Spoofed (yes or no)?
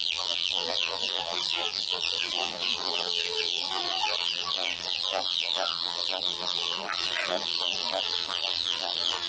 yes